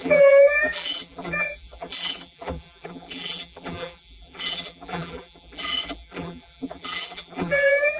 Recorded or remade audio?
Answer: remade